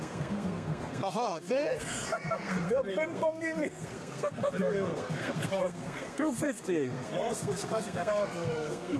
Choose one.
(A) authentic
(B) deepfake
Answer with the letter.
B